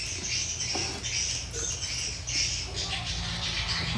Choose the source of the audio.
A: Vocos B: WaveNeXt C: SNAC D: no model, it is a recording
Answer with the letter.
D